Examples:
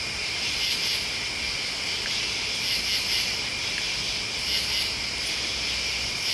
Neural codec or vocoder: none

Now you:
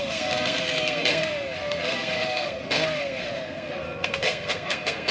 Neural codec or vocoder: codec, SNAC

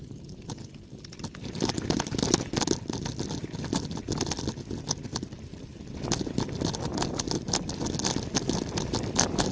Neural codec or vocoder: none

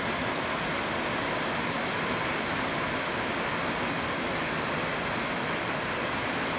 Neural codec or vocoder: none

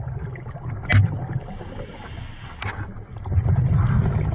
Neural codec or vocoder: none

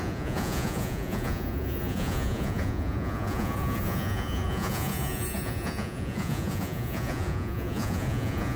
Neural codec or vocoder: vocoder, Vocos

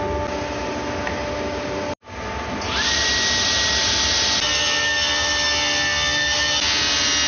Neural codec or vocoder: none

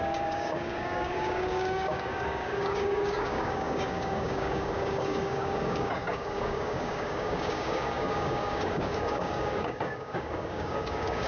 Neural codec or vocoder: codec, DAC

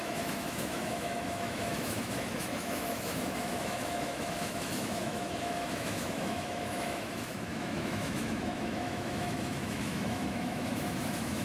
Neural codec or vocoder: autoencoder, DAC-VAE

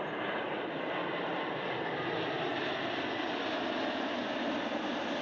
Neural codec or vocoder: none